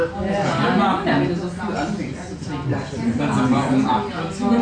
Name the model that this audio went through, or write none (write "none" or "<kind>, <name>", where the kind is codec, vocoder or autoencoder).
none